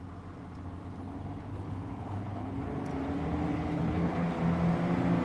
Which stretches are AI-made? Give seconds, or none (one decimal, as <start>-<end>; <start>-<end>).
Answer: 1.5-2.6; 3.5-4.3